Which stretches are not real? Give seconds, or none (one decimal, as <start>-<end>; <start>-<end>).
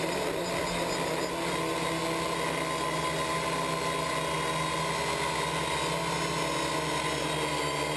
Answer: none